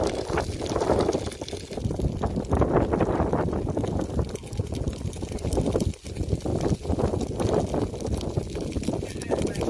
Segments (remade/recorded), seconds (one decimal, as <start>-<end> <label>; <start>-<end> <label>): 0.0-9.7 recorded